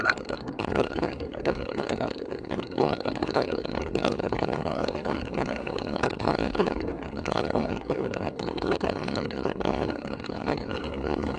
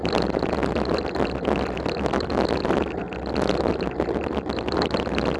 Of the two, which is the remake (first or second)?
first